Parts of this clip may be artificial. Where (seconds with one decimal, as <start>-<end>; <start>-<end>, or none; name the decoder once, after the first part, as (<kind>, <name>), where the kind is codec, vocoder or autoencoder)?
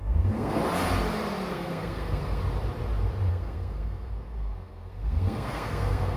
0.0-0.6 (codec, SNAC); 1.5-2.4; 3.3-6.2